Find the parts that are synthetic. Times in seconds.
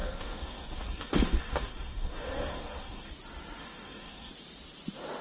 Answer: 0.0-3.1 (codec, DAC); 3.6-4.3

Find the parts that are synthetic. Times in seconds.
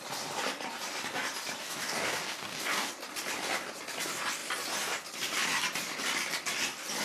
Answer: 1.6-2.9 (codec, DAC)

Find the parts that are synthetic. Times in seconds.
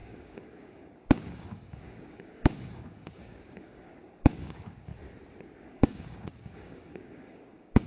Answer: 0.0-4.9 (codec, DAC); 5.7-7.9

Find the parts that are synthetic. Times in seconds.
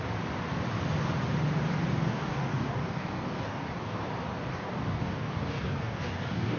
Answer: 2.1-4.0 (codec, DAC); 4.5-6.6